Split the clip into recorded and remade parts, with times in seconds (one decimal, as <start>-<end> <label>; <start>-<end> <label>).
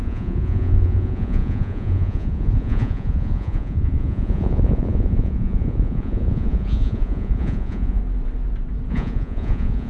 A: 0.0-8.0 remade; 8.0-8.9 recorded; 8.9-9.9 remade